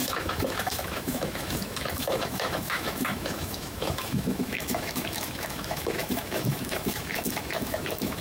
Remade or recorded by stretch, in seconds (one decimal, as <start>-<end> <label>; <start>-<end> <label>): 0.0-8.2 remade